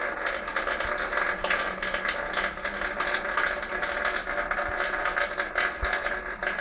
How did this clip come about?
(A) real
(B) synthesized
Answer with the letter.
A